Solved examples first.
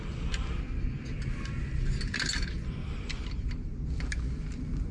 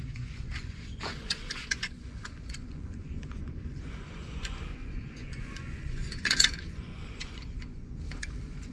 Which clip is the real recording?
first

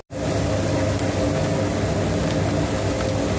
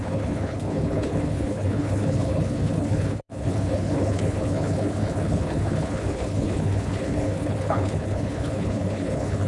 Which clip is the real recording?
first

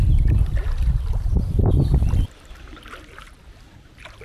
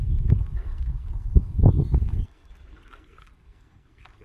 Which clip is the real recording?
first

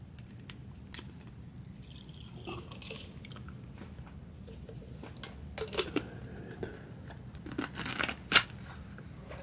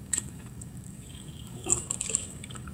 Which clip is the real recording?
first